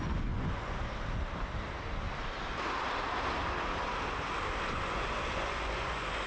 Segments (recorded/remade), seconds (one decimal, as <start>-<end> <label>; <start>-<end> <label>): 0.0-0.9 remade; 0.9-4.7 recorded; 4.7-6.3 remade

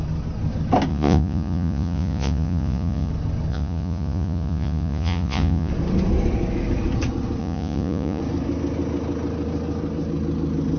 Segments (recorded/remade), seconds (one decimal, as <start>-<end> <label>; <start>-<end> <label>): 0.0-0.9 recorded; 0.9-3.1 remade; 3.1-3.5 recorded; 3.5-5.7 remade; 5.7-7.4 recorded; 7.4-8.2 remade; 8.2-10.8 recorded